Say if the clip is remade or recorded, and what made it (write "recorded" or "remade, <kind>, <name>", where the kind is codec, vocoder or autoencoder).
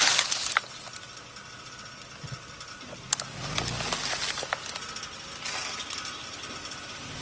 recorded